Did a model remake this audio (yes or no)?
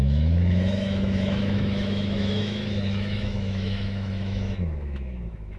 yes